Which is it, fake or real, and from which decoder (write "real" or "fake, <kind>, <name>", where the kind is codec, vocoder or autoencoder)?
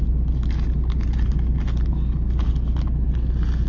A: real